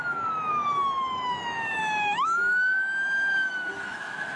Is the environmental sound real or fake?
fake